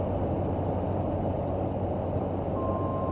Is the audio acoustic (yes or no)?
yes